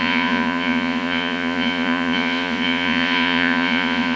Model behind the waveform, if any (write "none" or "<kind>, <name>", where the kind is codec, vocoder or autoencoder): vocoder, Vocos